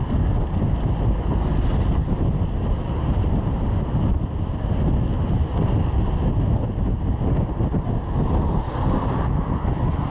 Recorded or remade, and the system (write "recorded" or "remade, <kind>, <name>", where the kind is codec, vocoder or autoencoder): recorded